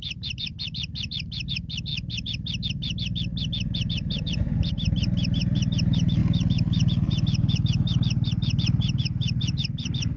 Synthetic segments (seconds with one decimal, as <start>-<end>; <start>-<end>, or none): none